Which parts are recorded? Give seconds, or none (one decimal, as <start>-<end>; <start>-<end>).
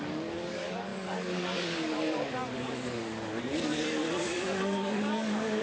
none